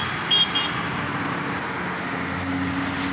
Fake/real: real